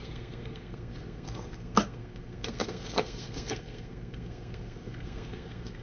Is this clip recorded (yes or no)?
no